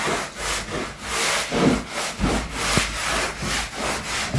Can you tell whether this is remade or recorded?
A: recorded